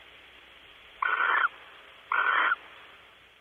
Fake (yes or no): yes